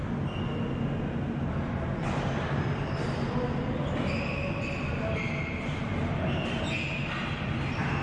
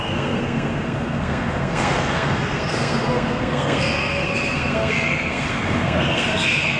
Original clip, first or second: first